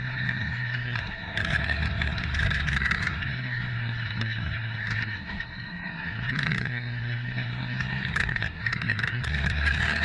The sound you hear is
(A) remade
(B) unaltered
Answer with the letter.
A